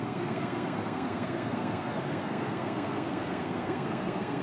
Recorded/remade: remade